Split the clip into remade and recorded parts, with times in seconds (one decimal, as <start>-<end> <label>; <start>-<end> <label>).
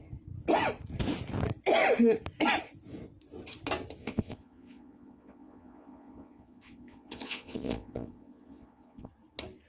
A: 0.0-4.0 recorded; 4.0-9.1 remade; 9.1-9.7 recorded